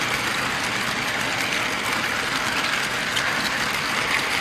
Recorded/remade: recorded